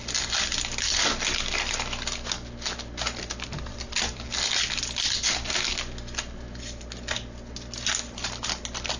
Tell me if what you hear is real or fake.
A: real